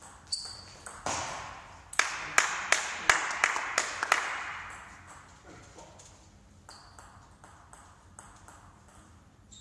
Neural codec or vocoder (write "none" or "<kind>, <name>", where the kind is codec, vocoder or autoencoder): none